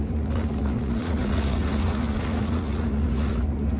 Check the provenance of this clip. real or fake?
fake